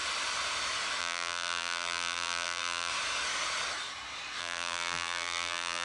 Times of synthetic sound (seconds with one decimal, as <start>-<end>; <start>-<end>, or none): 1.0-2.9; 4.4-5.8